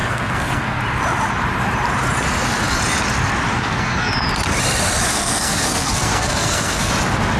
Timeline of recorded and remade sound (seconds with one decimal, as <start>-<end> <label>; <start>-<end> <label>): 0.0-0.8 remade; 0.8-3.5 recorded; 3.5-4.1 remade; 4.1-5.1 recorded; 5.1-6.9 remade; 6.9-7.4 recorded